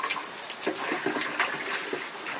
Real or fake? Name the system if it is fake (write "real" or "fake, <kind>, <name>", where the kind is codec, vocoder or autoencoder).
real